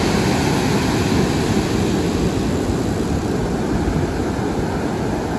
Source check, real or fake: real